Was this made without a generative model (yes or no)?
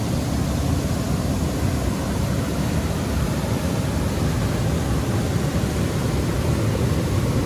no